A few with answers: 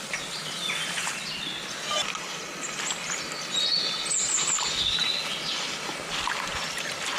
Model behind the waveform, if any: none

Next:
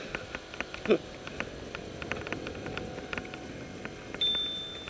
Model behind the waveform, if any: none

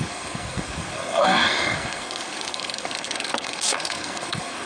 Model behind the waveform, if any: codec, SNAC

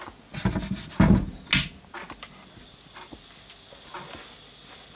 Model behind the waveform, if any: none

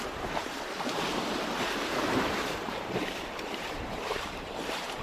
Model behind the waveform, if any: vocoder, BigVGAN v2